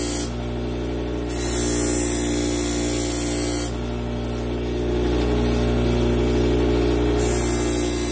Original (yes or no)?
yes